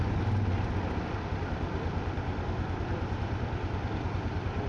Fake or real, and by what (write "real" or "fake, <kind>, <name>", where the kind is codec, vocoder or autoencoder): real